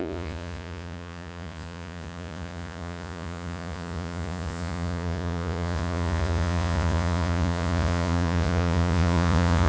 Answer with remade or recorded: remade